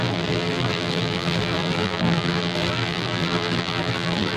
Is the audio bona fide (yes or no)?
no